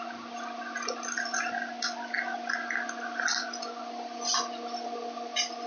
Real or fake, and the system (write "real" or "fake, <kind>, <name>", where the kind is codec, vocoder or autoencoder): real